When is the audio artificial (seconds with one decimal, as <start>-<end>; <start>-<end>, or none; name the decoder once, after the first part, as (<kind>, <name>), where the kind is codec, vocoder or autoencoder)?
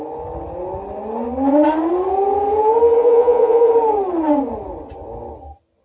3.0-3.7 (vocoder, Vocos)